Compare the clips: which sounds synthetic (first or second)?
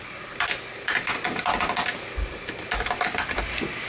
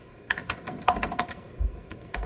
second